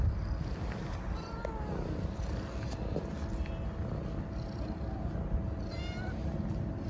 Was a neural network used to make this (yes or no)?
no